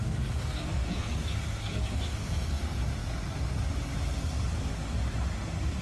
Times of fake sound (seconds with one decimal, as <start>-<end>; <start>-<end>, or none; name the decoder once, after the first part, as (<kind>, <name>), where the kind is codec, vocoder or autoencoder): 0.0-2.6 (codec, SNAC)